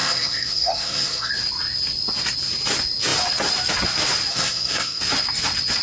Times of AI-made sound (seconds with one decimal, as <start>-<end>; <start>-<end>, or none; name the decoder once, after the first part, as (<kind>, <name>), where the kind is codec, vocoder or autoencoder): 0.0-1.3 (codec, SNAC); 4.3-5.0